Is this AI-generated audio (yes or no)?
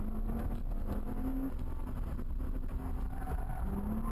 no